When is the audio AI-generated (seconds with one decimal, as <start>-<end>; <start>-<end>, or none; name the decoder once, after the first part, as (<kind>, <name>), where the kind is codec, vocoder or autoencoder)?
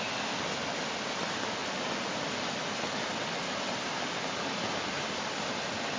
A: none